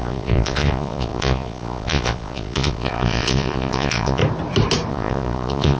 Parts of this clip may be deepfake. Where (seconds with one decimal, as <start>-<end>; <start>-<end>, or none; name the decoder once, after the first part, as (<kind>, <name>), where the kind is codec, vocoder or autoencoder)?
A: 0.0-4.2 (vocoder, Vocos); 4.9-5.8